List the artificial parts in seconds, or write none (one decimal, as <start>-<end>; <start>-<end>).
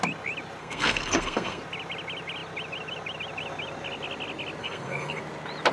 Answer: 0.6-1.6; 4.6-5.2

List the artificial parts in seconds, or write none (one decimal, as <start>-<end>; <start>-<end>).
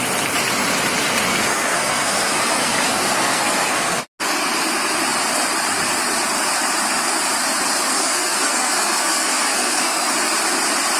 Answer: 1.3-4.0; 7.9-10.1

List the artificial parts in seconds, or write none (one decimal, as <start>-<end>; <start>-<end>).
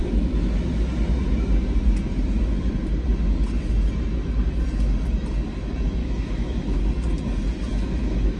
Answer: 6.0-6.8; 7.7-8.4